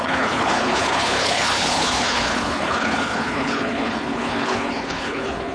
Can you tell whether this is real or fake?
fake